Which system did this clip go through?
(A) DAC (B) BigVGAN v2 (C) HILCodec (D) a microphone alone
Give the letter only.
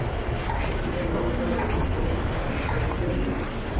D